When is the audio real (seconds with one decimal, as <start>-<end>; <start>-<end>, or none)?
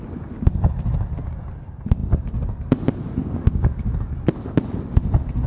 0.0-3.2; 4.0-5.5